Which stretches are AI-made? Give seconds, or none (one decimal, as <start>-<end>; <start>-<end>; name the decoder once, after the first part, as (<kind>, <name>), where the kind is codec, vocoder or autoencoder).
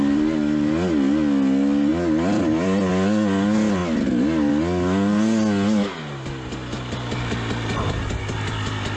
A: 1.9-2.9 (vocoder, BigVGAN v2)